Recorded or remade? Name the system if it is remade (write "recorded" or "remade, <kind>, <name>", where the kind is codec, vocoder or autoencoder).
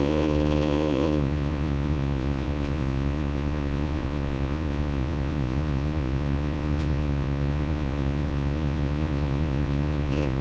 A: remade, vocoder, Vocos